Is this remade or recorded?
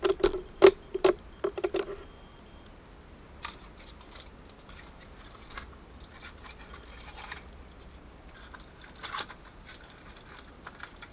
recorded